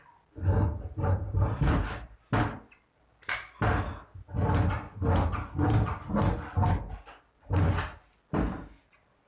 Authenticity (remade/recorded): recorded